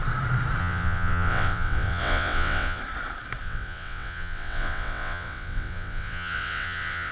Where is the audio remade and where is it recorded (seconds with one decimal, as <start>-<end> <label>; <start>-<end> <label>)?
0.0-0.6 recorded; 0.6-2.8 remade; 2.8-3.4 recorded; 3.4-7.1 remade